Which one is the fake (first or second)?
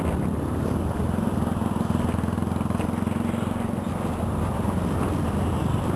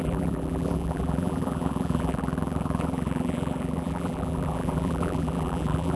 second